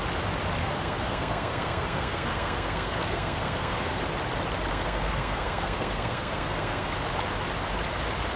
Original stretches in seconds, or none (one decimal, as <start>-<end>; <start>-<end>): 0.0-0.6; 4.0-4.7; 6.9-8.4